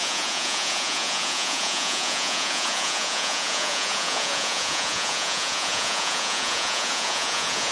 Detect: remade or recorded remade